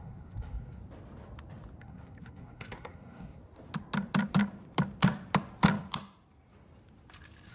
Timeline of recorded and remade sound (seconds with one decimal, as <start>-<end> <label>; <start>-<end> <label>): 0.0-0.8 remade; 0.8-1.8 recorded; 1.8-3.4 remade; 3.4-7.5 recorded